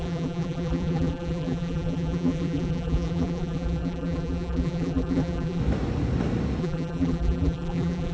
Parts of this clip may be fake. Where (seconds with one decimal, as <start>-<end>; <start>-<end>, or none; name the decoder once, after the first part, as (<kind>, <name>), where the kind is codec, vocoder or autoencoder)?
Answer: 0.0-5.6 (vocoder, BigVGAN v2); 6.6-8.1